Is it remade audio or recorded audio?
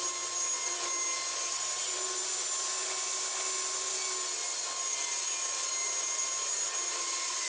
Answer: recorded